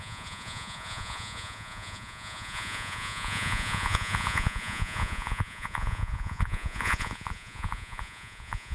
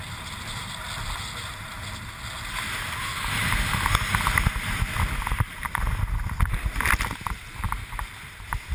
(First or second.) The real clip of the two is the second